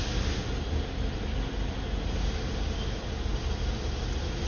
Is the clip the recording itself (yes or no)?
yes